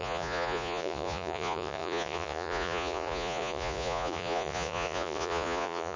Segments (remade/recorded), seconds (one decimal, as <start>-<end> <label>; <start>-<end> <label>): 0.0-6.0 remade